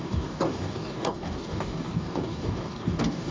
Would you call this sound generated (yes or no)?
yes